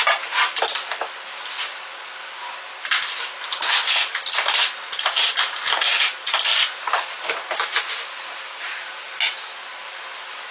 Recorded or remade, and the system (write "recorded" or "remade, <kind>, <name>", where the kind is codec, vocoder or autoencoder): recorded